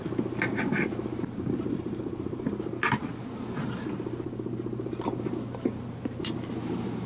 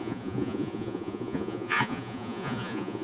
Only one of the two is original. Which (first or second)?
first